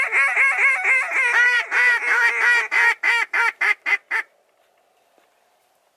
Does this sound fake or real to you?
real